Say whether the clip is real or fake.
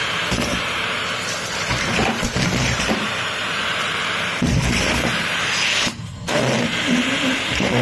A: fake